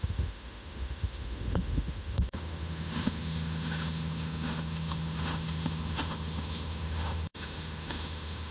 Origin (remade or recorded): remade